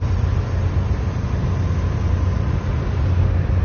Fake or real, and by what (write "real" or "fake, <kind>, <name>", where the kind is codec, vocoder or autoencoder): real